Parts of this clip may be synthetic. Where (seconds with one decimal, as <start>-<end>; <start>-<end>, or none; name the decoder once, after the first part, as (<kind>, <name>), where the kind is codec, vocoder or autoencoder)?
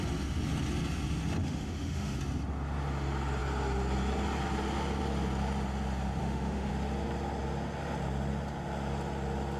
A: 1.4-2.2 (autoencoder, DAC-VAE); 6.2-6.7